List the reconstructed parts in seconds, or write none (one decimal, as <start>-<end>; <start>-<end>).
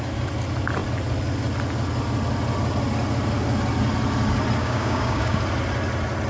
4.6-5.4